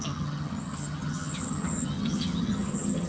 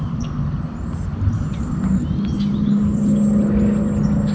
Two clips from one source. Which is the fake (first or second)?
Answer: first